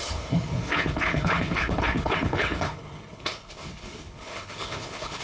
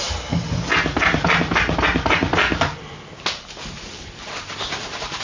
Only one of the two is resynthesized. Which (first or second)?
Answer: first